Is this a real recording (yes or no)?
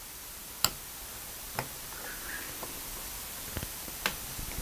yes